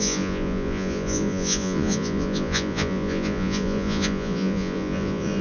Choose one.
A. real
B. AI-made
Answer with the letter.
B